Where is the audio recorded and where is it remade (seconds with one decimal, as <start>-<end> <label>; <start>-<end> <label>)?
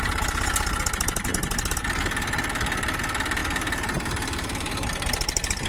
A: 0.0-3.4 recorded; 3.4-5.7 remade